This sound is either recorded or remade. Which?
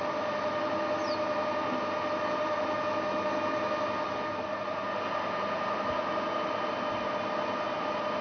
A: recorded